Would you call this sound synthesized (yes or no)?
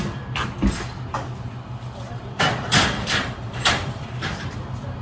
yes